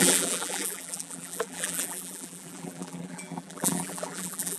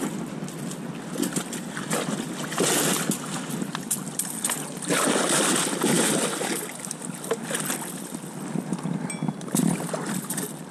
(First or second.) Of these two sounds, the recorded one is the second